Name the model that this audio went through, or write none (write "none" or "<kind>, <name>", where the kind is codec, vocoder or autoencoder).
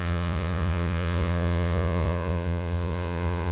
vocoder, Vocos